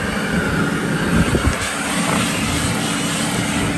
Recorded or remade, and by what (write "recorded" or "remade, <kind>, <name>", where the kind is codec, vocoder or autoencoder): recorded